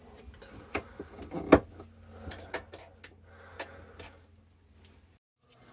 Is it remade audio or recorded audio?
recorded